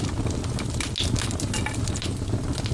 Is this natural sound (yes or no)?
yes